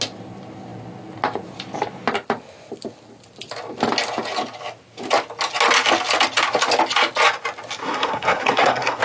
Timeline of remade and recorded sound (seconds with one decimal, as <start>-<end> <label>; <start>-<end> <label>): 0.0-7.8 recorded; 7.8-9.0 remade